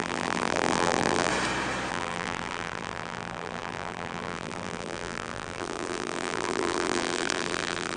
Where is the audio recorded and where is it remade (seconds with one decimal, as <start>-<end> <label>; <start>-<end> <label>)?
0.0-1.3 remade; 1.3-1.9 recorded; 1.9-8.0 remade

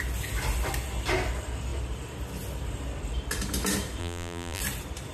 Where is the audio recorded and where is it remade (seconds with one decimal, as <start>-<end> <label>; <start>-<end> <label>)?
0.0-4.0 recorded; 4.0-4.6 remade; 4.6-5.1 recorded

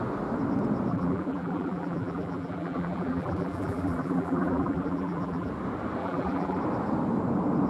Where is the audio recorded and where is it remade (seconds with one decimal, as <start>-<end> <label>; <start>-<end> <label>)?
0.0-0.9 recorded; 0.9-5.5 remade; 5.5-6.0 recorded; 6.0-6.6 remade; 6.6-7.7 recorded